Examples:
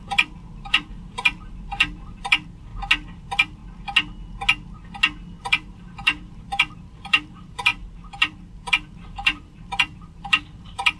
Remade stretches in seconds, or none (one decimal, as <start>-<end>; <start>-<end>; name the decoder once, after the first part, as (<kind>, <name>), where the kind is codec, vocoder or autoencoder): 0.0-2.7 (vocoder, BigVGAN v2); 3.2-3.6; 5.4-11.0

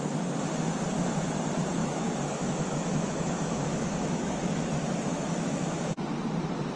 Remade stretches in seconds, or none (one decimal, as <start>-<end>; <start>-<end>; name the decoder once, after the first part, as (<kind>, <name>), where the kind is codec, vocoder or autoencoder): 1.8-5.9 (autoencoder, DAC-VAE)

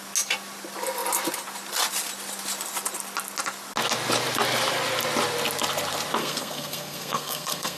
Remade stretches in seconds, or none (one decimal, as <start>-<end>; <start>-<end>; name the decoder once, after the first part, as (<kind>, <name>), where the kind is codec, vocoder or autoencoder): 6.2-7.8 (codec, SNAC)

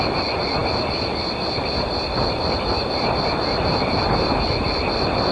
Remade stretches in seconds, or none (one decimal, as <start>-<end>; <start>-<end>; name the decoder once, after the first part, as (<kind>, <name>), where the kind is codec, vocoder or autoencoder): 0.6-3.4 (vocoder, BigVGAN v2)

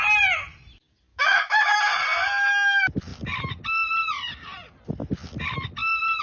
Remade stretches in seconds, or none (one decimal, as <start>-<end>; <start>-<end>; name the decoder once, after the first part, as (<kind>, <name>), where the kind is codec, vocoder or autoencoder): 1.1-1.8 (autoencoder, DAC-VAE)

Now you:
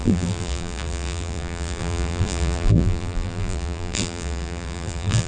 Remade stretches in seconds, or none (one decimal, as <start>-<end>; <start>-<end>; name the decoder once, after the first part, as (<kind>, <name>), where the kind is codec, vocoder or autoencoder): 0.0-5.3 (vocoder, BigVGAN v2)

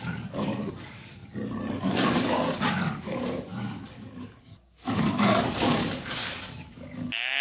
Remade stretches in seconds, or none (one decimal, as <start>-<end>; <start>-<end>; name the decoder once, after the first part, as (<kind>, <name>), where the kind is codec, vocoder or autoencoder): 0.0-1.2 (codec, DAC); 1.8-7.4